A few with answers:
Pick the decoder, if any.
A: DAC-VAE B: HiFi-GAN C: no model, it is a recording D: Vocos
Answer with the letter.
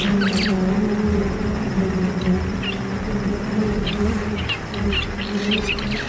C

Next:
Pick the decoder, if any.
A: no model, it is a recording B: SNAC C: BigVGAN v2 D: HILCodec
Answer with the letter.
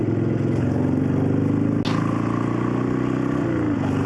A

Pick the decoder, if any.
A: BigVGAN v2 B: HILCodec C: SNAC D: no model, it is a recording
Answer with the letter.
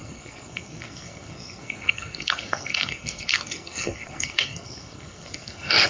C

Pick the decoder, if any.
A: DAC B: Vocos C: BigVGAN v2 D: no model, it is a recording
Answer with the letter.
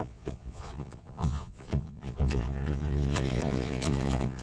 B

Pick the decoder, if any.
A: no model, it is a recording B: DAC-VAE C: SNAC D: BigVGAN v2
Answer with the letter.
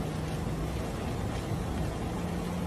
A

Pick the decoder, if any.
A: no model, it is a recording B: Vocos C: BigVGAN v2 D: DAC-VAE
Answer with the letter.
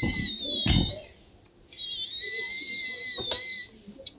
A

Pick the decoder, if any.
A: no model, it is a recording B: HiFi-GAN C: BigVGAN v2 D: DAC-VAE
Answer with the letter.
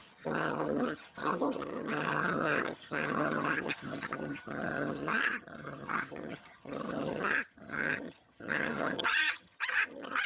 B